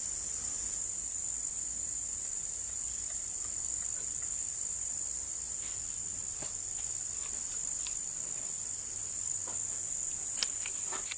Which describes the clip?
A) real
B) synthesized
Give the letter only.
A